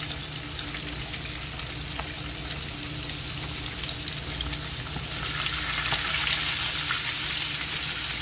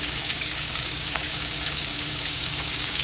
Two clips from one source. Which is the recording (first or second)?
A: first